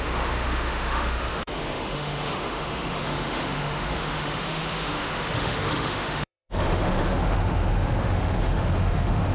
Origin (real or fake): fake